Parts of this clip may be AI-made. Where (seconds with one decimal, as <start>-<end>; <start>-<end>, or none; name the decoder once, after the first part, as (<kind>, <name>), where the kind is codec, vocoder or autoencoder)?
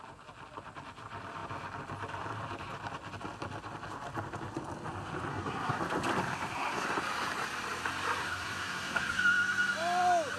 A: 5.3-5.8 (codec, SNAC); 8.2-9.2